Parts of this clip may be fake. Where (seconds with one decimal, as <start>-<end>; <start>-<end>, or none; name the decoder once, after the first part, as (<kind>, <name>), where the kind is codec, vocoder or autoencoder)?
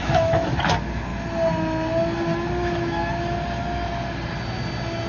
0.0-0.6 (autoencoder, DAC-VAE)